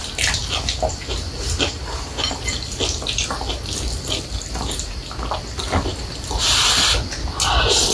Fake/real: real